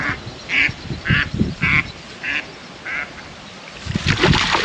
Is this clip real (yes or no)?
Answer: yes